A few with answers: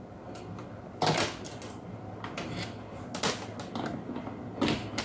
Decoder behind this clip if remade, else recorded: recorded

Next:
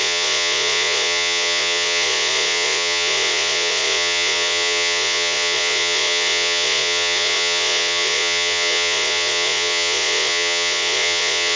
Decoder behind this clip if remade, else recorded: remade, vocoder, Vocos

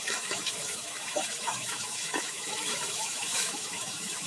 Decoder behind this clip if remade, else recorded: remade, autoencoder, DAC-VAE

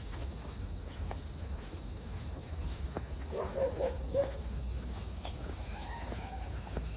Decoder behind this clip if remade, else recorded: remade, autoencoder, DAC-VAE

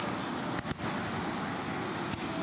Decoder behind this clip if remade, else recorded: recorded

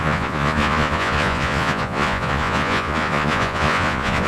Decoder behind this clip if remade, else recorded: remade, vocoder, Vocos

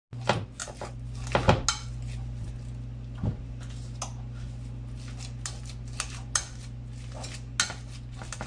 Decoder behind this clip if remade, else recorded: recorded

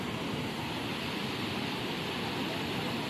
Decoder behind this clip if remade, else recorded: recorded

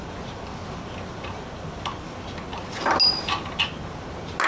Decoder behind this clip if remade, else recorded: recorded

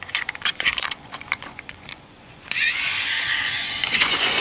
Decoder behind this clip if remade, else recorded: remade, vocoder, Vocos